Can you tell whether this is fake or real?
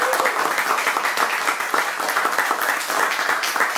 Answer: real